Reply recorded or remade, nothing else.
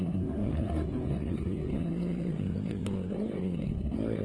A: remade